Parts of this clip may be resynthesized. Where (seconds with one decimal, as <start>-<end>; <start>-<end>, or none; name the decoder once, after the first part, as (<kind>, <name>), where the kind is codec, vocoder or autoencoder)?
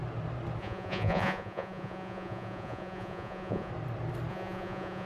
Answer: 0.6-3.7 (vocoder, Vocos); 4.3-5.1